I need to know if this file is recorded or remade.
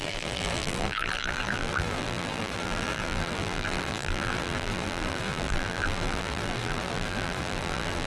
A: remade